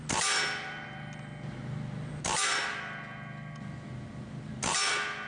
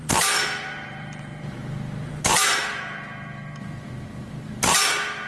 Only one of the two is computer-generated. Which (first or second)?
second